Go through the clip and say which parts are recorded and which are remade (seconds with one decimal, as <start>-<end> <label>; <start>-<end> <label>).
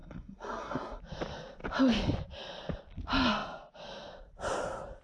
0.0-1.0 remade; 1.0-5.0 recorded